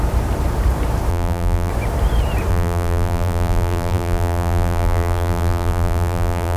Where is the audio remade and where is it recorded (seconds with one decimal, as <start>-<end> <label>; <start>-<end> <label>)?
0.0-1.1 recorded; 1.1-1.7 remade; 1.7-2.5 recorded; 2.5-6.6 remade